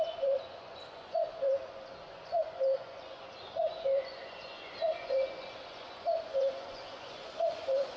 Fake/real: fake